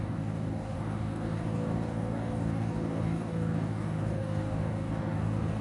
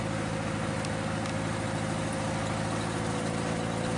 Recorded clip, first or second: second